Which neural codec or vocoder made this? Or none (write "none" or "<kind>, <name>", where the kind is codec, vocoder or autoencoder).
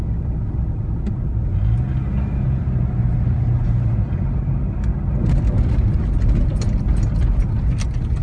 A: none